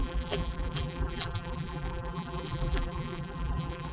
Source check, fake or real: fake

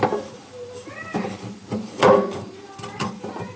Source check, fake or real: fake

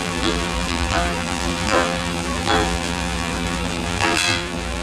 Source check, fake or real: fake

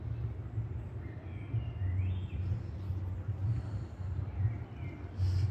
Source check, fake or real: real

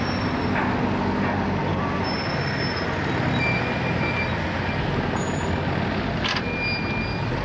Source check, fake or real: real